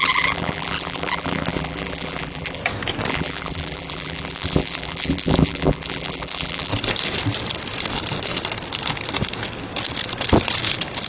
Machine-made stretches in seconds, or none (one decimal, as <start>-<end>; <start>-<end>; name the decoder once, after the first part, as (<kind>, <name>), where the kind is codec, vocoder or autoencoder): 0.0-2.6 (vocoder, BigVGAN v2); 3.1-6.7